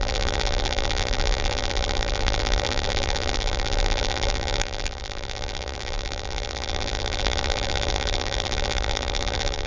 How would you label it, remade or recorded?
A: remade